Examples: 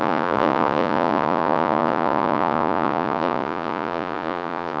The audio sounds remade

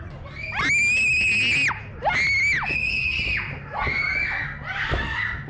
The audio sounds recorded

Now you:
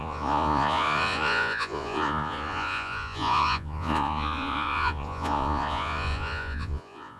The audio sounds remade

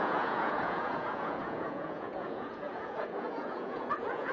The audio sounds remade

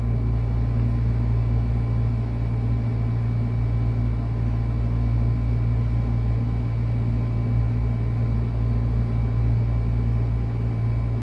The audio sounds recorded